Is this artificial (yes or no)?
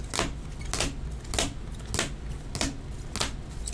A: no